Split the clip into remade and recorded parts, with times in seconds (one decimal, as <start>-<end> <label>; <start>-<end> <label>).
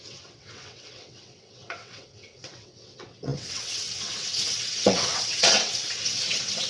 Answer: 0.0-6.7 remade